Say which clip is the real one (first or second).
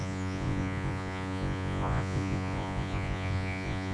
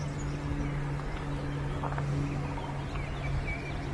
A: second